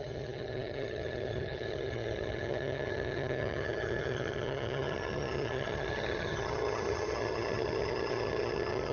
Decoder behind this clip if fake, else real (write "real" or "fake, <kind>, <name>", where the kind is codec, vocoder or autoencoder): fake, vocoder, HiFi-GAN